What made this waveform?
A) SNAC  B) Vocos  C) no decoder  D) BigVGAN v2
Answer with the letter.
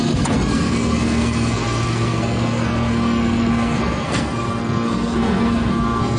A